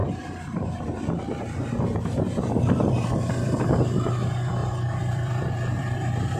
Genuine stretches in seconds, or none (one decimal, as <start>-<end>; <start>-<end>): 3.8-4.6